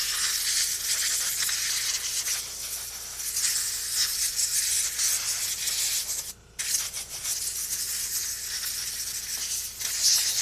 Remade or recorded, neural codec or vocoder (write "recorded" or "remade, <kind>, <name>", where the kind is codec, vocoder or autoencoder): recorded